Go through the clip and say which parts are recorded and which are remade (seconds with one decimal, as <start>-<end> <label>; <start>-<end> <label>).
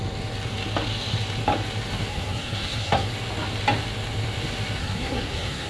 0.0-2.1 recorded; 2.1-3.1 remade; 3.1-4.8 recorded; 4.8-5.7 remade